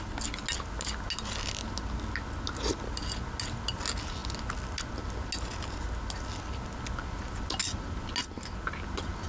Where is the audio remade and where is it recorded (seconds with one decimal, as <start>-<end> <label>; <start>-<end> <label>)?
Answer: 0.0-9.3 recorded